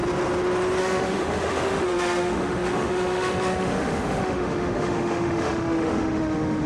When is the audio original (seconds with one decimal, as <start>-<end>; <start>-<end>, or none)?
0.0-0.8